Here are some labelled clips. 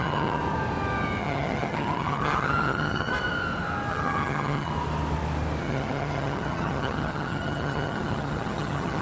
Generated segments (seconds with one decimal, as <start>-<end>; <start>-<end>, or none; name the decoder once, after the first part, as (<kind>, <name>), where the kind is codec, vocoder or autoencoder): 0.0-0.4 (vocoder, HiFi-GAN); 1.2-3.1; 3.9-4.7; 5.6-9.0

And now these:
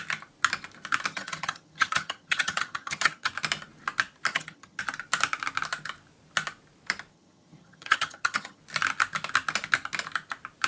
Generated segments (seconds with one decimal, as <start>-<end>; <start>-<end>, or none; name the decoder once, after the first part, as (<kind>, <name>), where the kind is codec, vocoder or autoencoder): 1.1-3.3 (vocoder, HiFi-GAN); 4.3-4.8; 7.1-8.6

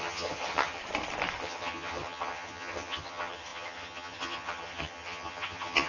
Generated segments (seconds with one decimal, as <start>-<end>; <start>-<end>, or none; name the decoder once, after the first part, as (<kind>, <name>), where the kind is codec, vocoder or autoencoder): 0.0-0.8 (vocoder, HiFi-GAN); 1.4-5.9

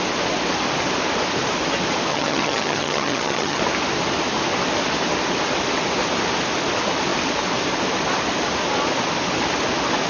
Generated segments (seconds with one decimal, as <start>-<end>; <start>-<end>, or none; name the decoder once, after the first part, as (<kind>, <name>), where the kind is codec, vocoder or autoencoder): 2.1-3.6 (vocoder, HiFi-GAN)